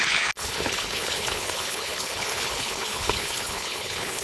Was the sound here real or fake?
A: fake